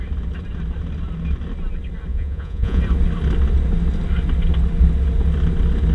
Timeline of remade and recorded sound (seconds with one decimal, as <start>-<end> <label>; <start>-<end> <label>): 0.0-2.1 recorded; 2.1-2.8 remade; 2.8-5.9 recorded